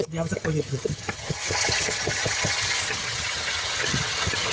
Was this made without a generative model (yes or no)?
no